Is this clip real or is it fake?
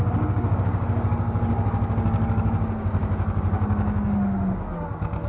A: fake